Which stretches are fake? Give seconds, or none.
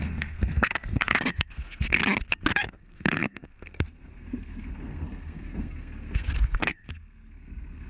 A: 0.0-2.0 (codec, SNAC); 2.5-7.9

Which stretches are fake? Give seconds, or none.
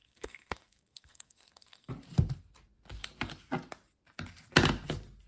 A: 0.0-1.9 (codec, SNAC)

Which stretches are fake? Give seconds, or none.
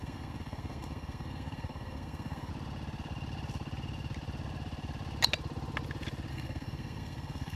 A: 0.0-2.5 (codec, SNAC); 6.3-7.6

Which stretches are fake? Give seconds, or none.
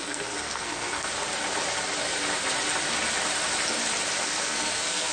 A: 0.0-1.1 (codec, SNAC); 4.2-5.1